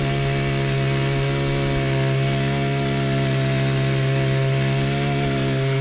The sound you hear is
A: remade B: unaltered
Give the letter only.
B